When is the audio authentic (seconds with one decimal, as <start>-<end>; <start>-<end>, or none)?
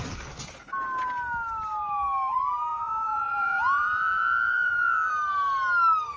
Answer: 0.0-2.7; 5.1-6.2